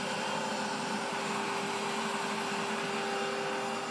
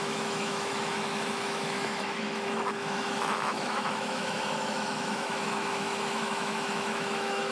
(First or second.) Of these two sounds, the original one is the first